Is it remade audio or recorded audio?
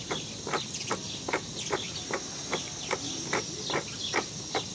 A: recorded